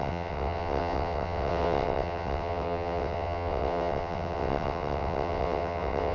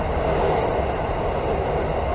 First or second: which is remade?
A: first